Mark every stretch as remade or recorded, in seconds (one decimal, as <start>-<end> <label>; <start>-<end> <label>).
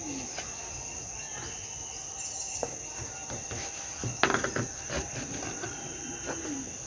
0.0-6.9 recorded